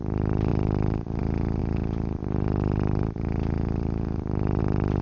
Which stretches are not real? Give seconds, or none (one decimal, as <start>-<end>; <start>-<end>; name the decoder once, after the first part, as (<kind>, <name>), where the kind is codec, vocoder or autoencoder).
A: none